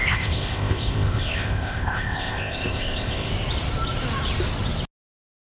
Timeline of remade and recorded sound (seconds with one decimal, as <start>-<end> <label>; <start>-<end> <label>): 0.0-3.3 remade; 3.3-5.5 recorded